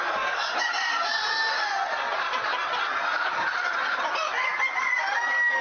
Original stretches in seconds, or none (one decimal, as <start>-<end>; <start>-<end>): 0.0-5.6